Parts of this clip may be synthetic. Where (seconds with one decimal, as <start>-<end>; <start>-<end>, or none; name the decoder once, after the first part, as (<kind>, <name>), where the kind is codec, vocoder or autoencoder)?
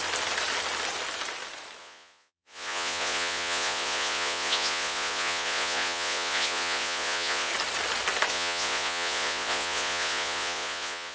1.8-7.5 (vocoder, Vocos); 8.3-11.1